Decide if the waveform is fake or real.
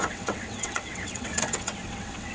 fake